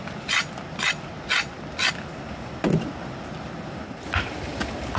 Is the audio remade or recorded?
recorded